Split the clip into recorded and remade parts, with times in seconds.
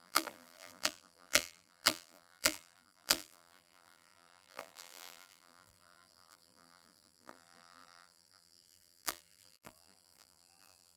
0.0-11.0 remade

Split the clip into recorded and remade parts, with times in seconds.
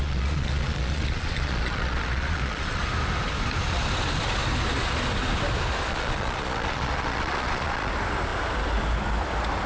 0.0-2.8 remade; 2.8-5.9 recorded; 5.9-7.9 remade; 7.9-9.7 recorded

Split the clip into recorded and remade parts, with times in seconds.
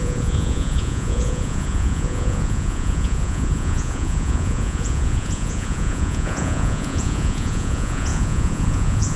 0.0-9.2 remade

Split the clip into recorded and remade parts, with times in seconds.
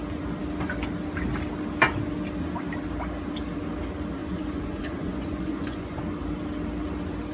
0.0-4.2 recorded; 4.2-6.0 remade; 6.0-7.3 recorded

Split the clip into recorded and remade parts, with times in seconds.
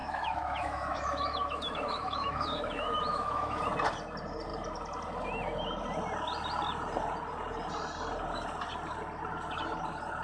0.0-3.6 remade; 3.6-10.2 recorded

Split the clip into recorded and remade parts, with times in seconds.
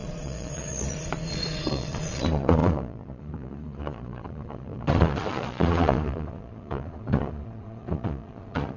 0.0-8.8 remade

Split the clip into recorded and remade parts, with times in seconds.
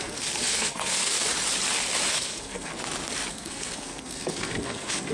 0.0-1.1 remade; 1.1-2.1 recorded; 2.1-2.7 remade; 2.7-3.3 recorded; 3.3-5.1 remade